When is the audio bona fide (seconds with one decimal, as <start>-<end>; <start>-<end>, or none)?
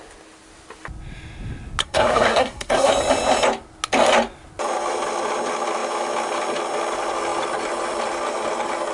0.0-1.8; 2.9-8.9